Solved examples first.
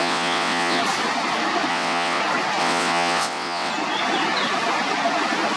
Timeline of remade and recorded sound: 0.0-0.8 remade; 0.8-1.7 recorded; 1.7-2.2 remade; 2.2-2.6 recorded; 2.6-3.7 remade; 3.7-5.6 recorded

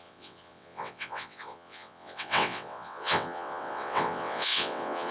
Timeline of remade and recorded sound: 0.0-5.1 remade

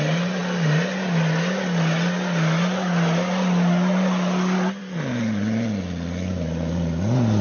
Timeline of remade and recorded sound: 0.0-7.4 recorded

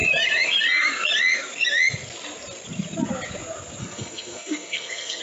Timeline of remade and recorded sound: 0.0-3.8 recorded; 3.8-5.2 remade